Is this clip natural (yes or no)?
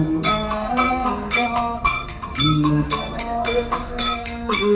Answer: no